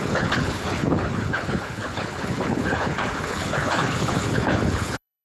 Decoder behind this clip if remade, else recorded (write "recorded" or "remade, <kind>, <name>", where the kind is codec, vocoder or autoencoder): remade, codec, HILCodec